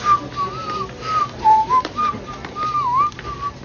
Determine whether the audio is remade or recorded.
recorded